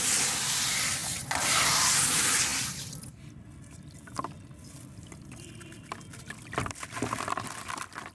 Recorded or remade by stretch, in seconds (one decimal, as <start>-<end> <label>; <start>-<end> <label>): 0.0-1.0 recorded; 1.0-1.6 remade; 1.6-8.1 recorded